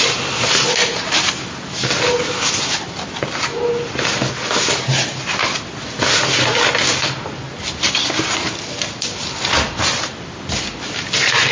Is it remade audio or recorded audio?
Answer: recorded